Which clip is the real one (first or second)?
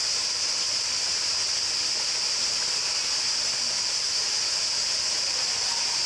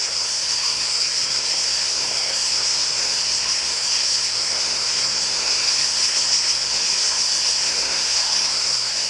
first